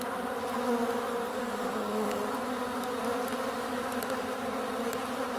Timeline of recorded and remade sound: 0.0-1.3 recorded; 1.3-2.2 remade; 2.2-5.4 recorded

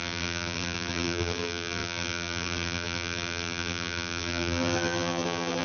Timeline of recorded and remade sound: 0.0-5.6 remade

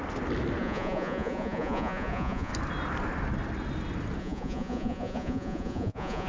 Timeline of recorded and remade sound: 0.0-0.6 recorded; 0.6-2.5 remade; 2.5-4.2 recorded; 4.2-6.3 remade

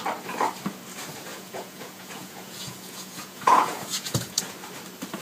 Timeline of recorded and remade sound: 0.0-1.3 recorded; 1.3-4.4 remade; 4.4-5.2 recorded

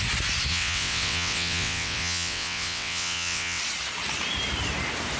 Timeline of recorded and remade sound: 0.0-0.5 recorded; 0.5-3.6 remade; 3.6-5.2 recorded